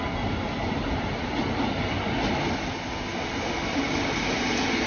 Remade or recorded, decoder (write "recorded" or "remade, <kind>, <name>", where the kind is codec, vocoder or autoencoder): recorded